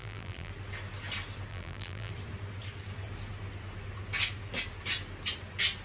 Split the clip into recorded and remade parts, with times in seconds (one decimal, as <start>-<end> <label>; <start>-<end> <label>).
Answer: 0.0-0.5 remade; 0.5-1.5 recorded; 1.5-2.1 remade; 2.1-5.8 recorded